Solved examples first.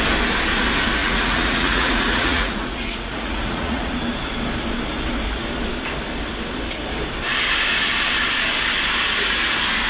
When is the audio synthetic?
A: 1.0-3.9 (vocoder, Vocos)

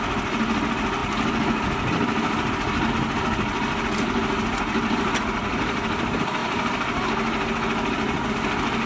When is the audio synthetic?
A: none

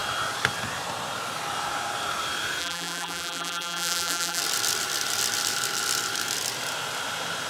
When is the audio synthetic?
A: 2.6-4.4 (vocoder, BigVGAN v2)

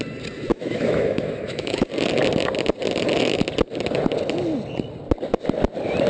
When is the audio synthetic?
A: 0.5-1.9 (autoencoder, DAC-VAE)

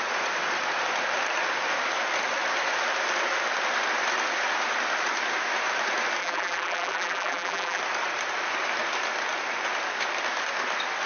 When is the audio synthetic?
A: 6.2-7.8 (vocoder, BigVGAN v2)

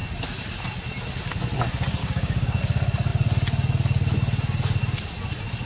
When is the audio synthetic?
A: 2.0-2.6 (codec, DAC)

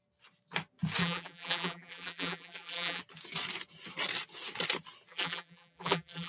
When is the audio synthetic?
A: 1.0-3.0 (vocoder, BigVGAN v2); 5.1-6.3